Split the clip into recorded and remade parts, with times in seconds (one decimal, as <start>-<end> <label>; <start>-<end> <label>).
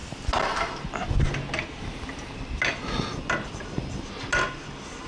0.0-5.1 recorded